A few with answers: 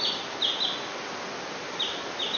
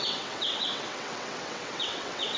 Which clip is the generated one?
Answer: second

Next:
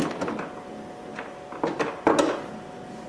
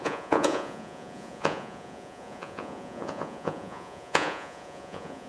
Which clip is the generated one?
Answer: second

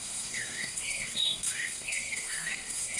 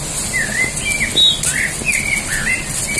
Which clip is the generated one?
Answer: first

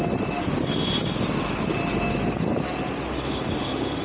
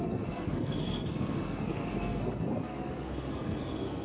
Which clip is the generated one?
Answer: second